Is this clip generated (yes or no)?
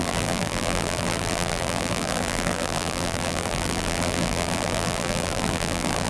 yes